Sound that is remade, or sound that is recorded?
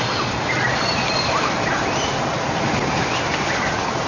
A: recorded